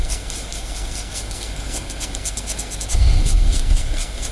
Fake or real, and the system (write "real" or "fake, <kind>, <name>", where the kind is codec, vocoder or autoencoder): fake, codec, SNAC